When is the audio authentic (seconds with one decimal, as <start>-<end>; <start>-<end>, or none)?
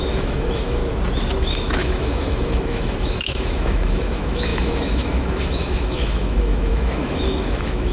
0.8-1.4